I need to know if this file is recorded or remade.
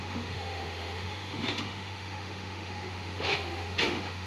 remade